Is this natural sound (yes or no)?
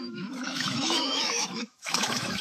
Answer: no